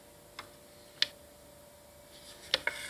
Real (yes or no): yes